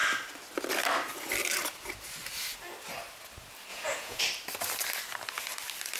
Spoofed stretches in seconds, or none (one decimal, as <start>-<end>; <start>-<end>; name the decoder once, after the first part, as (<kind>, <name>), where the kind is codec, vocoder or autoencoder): 3.7-4.2 (vocoder, Vocos)